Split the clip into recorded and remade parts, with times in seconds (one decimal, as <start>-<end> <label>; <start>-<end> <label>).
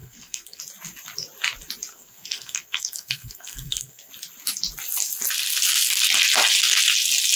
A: 0.0-0.6 remade; 0.6-1.9 recorded; 1.9-4.1 remade; 4.1-7.4 recorded